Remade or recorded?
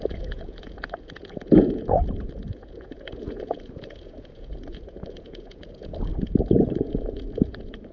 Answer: remade